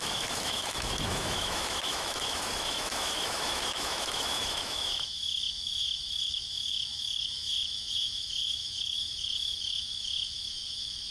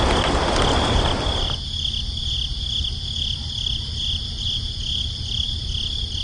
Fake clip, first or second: first